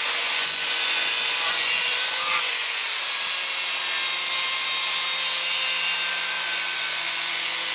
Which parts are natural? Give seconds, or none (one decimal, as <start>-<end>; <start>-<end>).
2.8-6.2